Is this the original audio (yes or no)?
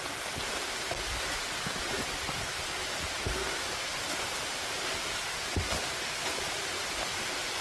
yes